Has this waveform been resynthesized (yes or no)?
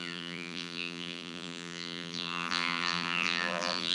yes